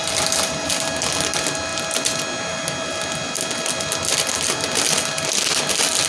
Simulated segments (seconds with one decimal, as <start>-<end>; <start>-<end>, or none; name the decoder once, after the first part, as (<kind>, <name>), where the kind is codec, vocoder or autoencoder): none